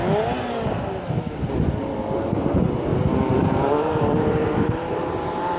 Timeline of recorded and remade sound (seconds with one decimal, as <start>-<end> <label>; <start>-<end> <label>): 0.0-2.4 recorded; 2.4-2.9 remade; 2.9-3.4 recorded; 3.4-5.6 remade